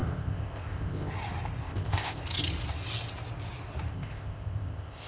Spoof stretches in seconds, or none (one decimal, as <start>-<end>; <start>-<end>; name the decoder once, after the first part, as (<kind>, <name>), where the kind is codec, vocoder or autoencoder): 0.0-1.1 (codec, ZipCodec); 1.6-2.2; 3.9-5.1